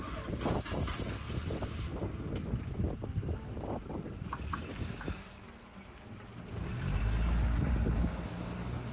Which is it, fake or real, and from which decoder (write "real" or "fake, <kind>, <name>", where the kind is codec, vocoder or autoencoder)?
real